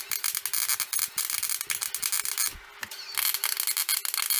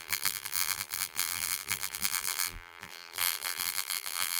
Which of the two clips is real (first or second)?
first